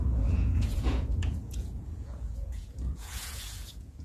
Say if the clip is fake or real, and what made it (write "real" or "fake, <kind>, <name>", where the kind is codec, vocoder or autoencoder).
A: fake, vocoder, Vocos